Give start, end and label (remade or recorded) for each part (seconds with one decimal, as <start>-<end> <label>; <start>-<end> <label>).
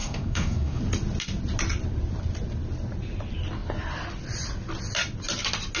0.0-0.8 remade; 0.8-5.8 recorded